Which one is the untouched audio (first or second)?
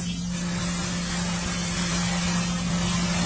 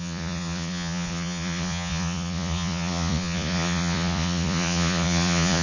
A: first